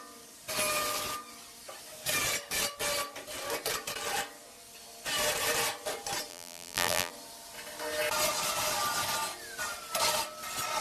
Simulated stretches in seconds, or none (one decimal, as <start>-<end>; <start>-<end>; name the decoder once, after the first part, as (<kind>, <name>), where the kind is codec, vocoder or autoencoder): 6.3-7.1 (vocoder, BigVGAN v2)